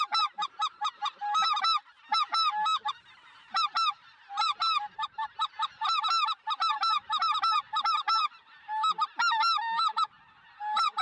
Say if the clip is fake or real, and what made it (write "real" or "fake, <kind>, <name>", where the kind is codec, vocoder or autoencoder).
real